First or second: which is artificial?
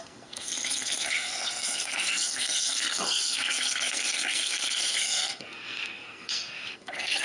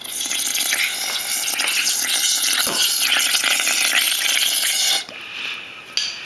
first